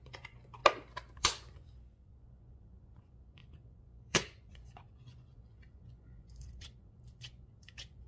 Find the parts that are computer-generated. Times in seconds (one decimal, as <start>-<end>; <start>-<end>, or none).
0.0-0.6; 1.2-8.1